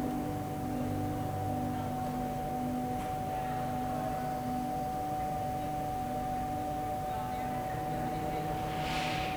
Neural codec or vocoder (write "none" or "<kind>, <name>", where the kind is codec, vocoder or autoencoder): none